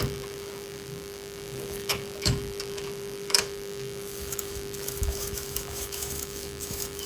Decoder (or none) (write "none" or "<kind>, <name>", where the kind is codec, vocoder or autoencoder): autoencoder, DAC-VAE